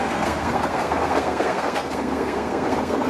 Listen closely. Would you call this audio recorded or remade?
remade